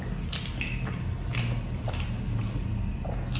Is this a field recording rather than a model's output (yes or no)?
yes